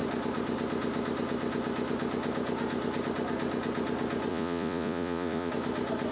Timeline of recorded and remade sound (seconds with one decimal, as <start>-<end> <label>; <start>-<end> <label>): 0.0-4.3 recorded; 4.3-5.5 remade; 5.5-6.1 recorded